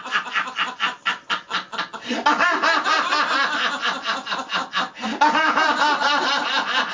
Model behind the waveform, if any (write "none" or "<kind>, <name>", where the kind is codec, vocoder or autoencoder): none